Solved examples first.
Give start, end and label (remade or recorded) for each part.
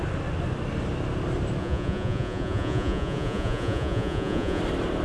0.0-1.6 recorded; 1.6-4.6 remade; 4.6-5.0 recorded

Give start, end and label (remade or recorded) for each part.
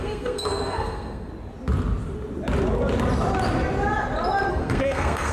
0.0-1.3 remade; 1.3-4.5 recorded; 4.5-5.3 remade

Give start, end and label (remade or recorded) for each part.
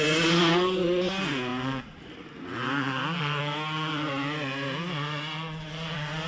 0.0-6.3 recorded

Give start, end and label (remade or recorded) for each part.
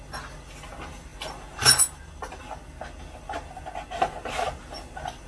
0.0-5.3 recorded